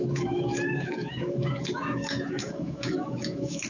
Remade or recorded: remade